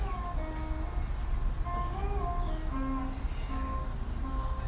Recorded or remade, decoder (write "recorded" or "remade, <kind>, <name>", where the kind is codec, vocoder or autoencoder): recorded